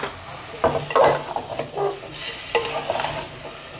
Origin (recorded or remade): recorded